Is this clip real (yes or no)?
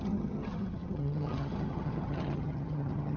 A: no